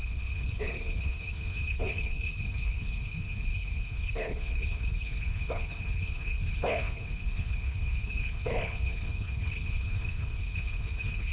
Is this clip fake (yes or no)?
yes